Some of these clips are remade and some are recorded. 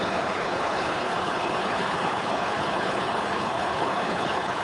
remade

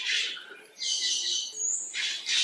recorded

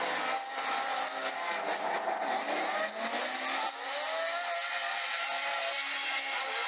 recorded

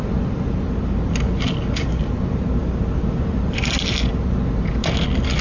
recorded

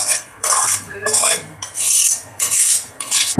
remade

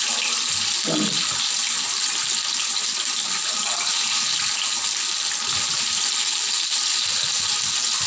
recorded